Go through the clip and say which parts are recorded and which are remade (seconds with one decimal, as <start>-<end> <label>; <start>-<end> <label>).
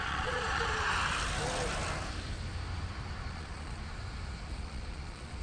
0.0-0.9 remade; 0.9-3.3 recorded; 3.3-3.8 remade; 3.8-4.5 recorded; 4.5-5.4 remade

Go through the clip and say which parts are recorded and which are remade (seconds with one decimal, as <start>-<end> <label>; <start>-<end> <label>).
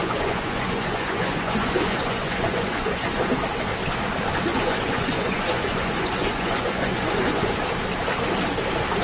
0.0-3.2 remade; 3.2-4.5 recorded; 4.5-7.6 remade; 7.6-9.0 recorded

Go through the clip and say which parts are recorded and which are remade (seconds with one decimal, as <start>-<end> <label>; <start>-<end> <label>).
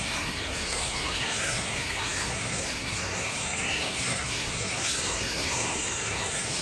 0.0-6.6 remade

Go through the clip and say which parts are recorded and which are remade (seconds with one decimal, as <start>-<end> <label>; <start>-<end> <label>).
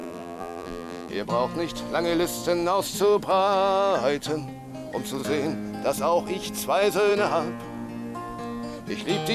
0.0-1.1 remade; 1.1-9.3 recorded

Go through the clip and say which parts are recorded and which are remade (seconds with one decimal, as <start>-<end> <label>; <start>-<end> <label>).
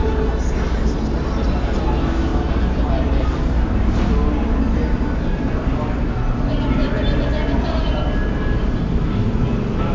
0.0-9.9 recorded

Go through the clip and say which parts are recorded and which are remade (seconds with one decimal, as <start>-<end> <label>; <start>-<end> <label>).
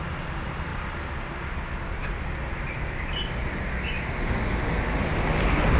0.0-5.8 recorded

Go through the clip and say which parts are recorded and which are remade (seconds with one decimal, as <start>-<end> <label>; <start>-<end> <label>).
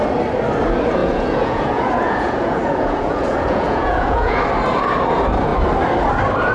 0.0-1.0 recorded; 1.0-4.4 remade; 4.4-6.5 recorded